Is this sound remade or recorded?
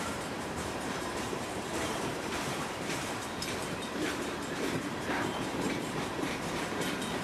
remade